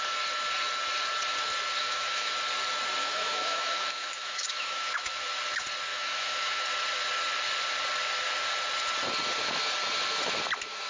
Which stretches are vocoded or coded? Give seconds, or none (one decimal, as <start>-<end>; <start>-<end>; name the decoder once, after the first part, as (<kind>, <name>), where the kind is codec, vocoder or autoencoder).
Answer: 1.8-2.3 (autoencoder, DAC-VAE); 3.0-5.3; 5.9-6.6